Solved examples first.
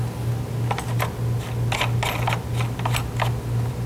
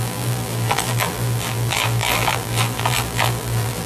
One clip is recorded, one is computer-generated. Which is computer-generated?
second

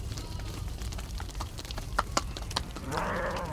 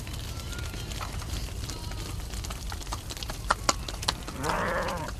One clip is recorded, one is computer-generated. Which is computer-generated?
first